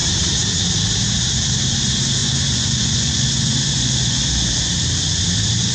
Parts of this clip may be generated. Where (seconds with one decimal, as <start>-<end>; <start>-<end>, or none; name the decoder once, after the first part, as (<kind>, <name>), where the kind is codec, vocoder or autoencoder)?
2.2-4.2 (vocoder, Vocos)

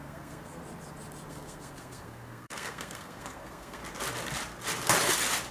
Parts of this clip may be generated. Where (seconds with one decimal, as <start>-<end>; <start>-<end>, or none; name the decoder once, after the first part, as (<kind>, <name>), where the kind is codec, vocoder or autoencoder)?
0.0-0.6 (codec, SNAC); 1.3-3.8

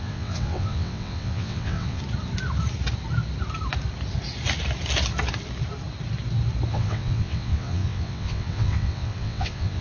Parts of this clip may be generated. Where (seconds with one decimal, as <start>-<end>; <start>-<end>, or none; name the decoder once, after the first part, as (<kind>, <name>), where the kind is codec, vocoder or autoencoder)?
0.0-2.0 (vocoder, WaveNeXt); 6.7-9.8